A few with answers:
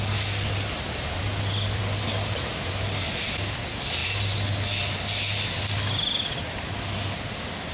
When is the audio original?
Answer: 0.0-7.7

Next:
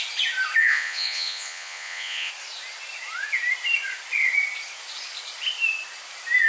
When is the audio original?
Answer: 0.0-0.6; 2.3-6.5

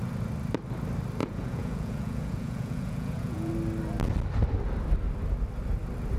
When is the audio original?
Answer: 0.0-1.2; 3.5-6.2

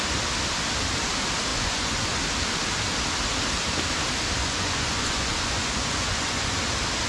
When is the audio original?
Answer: 0.0-1.5; 2.2-4.4; 6.5-7.1

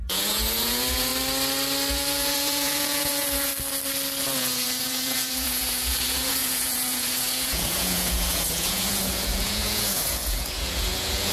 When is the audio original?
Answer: 1.1-1.9; 3.5-4.2

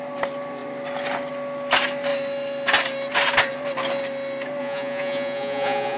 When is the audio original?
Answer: 0.0-4.6

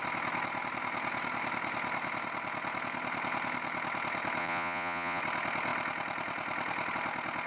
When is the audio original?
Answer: 0.0-4.4; 5.2-7.5

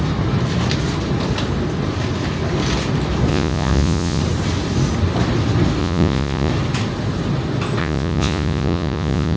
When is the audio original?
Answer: 0.0-3.3; 4.2-5.8; 6.5-7.8